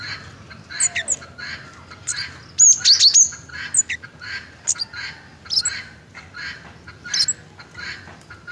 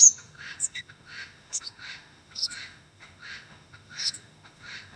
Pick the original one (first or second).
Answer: first